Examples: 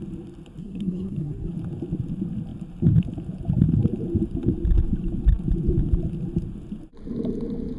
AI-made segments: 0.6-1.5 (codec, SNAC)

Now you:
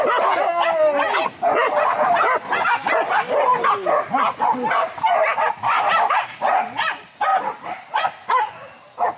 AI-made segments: none